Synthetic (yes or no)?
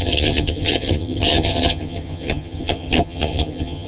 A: yes